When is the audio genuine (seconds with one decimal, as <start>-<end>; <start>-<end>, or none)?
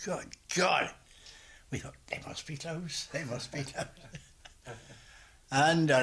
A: 0.0-6.0